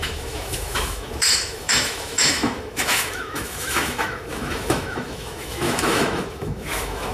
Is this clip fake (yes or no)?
yes